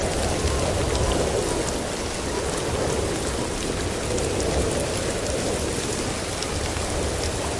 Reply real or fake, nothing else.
real